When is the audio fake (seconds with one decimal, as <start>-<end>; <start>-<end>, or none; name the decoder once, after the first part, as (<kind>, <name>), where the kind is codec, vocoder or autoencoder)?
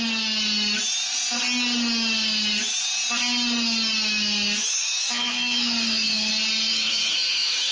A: 4.6-6.3 (autoencoder, DAC-VAE); 6.7-7.7